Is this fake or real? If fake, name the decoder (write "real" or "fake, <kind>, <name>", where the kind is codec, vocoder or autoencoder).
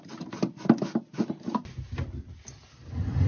real